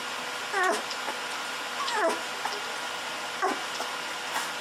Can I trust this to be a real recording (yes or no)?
yes